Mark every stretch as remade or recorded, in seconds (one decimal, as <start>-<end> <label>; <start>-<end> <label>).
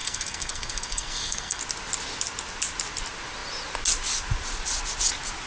0.0-1.6 remade; 1.6-5.5 recorded